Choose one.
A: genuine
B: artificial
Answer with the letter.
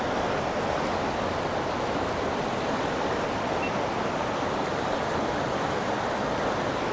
A